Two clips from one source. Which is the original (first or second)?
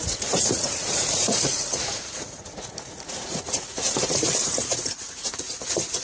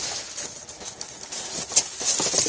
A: second